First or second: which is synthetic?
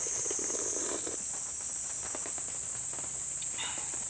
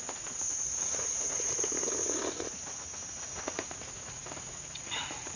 second